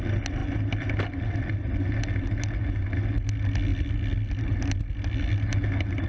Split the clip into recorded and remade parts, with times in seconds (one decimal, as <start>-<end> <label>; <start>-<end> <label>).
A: 0.0-6.1 recorded